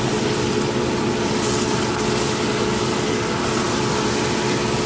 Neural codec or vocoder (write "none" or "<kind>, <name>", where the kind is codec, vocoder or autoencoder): none